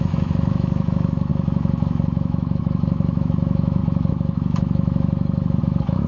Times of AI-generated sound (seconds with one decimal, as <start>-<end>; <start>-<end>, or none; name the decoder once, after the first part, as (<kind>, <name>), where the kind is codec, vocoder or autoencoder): 0.0-6.1 (autoencoder, DAC-VAE)